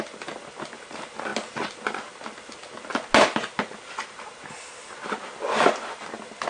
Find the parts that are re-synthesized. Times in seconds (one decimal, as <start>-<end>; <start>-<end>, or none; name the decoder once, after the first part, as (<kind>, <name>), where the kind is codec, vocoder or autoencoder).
none